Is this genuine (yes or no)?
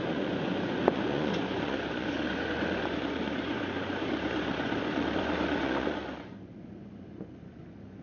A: no